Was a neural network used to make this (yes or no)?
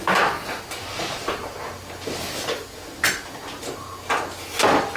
no